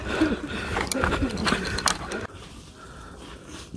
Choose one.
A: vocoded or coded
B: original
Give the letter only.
B